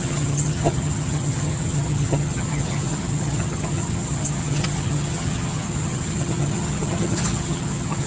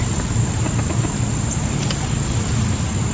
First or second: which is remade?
first